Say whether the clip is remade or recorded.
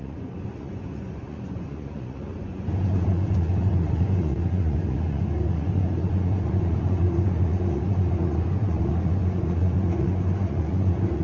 remade